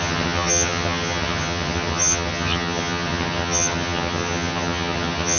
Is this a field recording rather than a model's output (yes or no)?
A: no